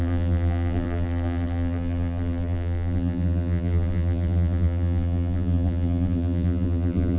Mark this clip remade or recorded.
remade